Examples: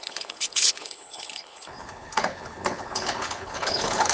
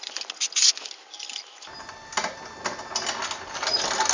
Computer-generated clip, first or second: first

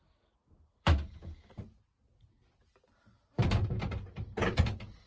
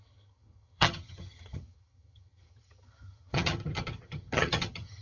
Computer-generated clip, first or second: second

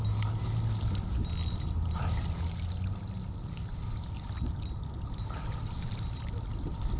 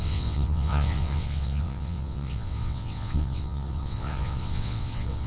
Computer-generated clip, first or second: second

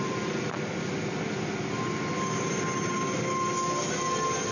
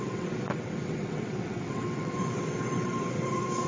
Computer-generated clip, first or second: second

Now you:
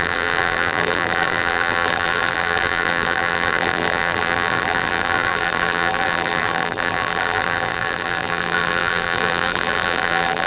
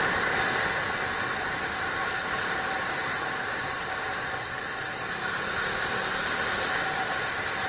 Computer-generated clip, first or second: first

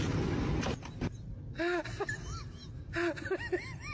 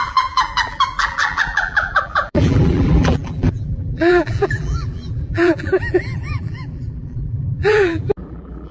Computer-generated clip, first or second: second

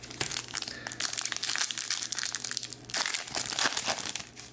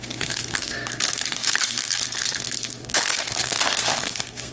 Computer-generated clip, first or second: second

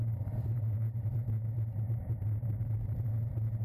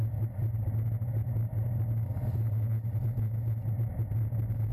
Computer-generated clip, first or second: first